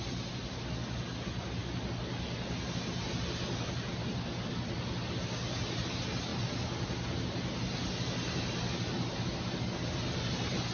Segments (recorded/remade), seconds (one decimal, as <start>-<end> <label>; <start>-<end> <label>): 0.0-10.7 recorded